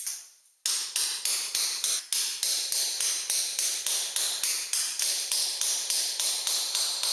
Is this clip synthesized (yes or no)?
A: no